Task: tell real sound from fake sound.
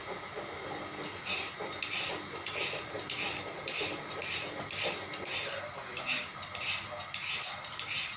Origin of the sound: real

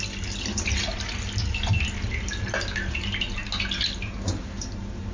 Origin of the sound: real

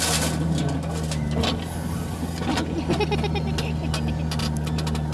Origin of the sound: real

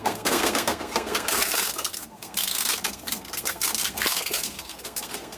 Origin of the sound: fake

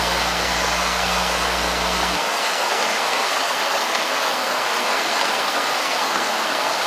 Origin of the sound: fake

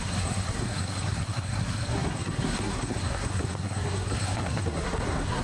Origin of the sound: fake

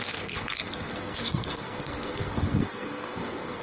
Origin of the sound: fake